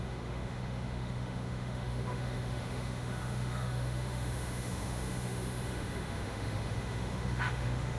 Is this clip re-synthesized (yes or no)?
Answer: yes